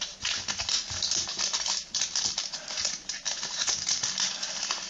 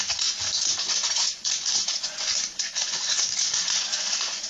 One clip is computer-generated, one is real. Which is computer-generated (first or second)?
second